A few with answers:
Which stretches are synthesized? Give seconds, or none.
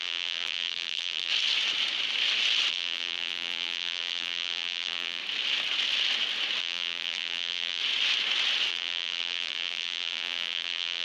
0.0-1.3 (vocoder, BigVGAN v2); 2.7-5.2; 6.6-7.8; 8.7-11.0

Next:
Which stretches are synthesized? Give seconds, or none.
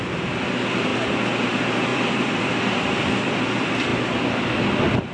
0.0-3.9 (vocoder, BigVGAN v2)